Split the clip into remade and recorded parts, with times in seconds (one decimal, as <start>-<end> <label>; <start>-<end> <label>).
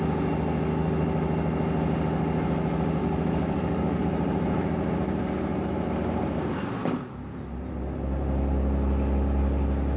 0.0-3.0 recorded; 3.0-4.0 remade; 4.0-10.0 recorded